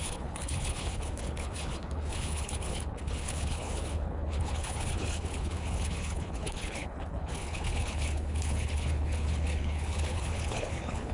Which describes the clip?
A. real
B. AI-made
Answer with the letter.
B